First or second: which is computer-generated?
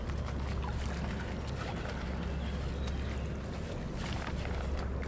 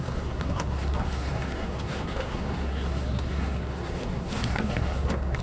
second